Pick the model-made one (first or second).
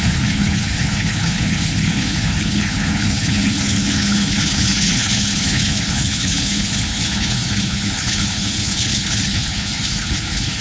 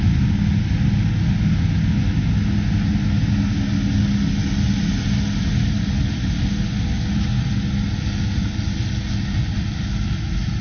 first